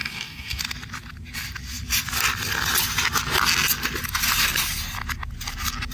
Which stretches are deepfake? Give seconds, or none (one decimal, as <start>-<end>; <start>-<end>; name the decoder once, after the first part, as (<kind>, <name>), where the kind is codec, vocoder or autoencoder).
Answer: 0.0-0.6 (codec, DAC)